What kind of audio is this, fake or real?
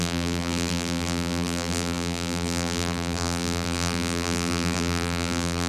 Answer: fake